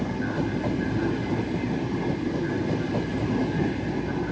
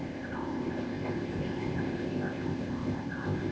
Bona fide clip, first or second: first